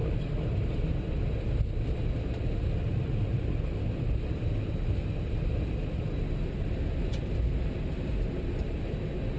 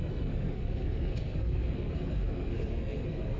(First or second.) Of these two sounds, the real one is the first